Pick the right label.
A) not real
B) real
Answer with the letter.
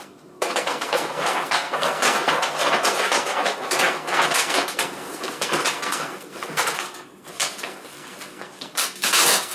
A